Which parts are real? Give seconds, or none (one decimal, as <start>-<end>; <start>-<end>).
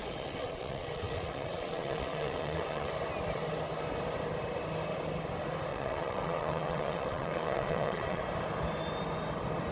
2.9-5.7; 8.2-9.7